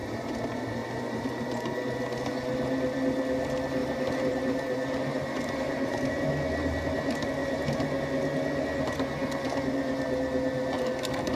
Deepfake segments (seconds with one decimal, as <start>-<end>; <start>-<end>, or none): 0.0-1.7; 3.8-6.1; 7.4-8.0